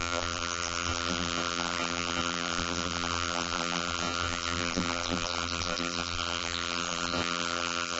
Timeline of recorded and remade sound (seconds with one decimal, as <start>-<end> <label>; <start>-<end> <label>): 0.0-8.0 remade